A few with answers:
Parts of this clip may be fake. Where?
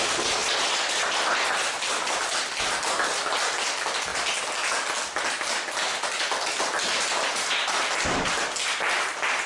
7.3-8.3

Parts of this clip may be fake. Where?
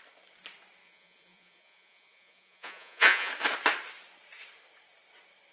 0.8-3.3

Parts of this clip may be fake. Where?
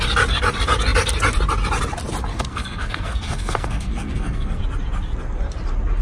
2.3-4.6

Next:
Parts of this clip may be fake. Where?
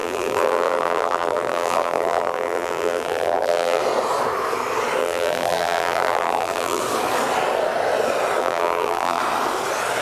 0.0-3.8; 5.0-6.8; 8.4-9.2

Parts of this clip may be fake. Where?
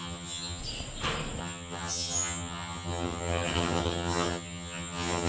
0.0-0.6; 1.4-5.3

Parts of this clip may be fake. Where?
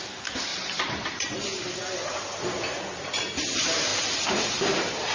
0.5-1.4; 3.9-5.1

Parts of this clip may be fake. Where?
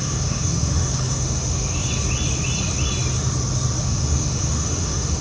0.0-1.8; 3.8-5.2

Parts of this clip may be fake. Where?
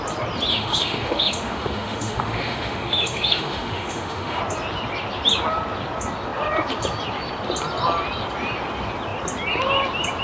0.5-4.4